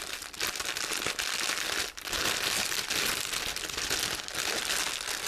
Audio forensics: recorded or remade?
recorded